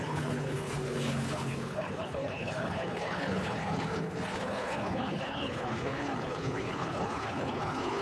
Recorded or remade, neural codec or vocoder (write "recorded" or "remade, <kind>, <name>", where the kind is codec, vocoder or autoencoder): remade, codec, HILCodec